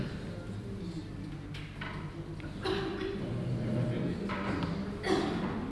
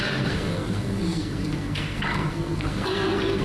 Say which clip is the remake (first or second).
second